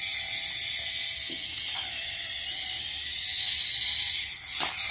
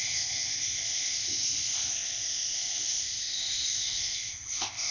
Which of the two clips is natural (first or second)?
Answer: first